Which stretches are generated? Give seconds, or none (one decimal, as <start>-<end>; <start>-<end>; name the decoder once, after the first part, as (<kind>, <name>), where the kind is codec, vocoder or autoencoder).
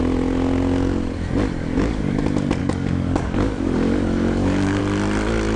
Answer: 1.6-2.2 (codec, DAC); 2.6-4.8